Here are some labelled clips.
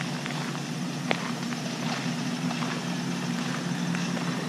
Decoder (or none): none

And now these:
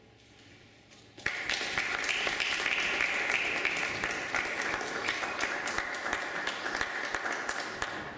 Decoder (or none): none